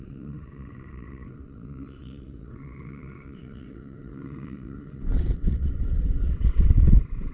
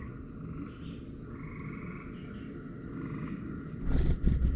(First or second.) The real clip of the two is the second